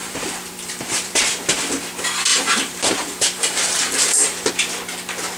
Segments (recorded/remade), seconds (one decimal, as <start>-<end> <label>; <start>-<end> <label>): 0.0-1.2 remade; 1.2-2.3 recorded; 2.3-4.5 remade; 4.5-5.4 recorded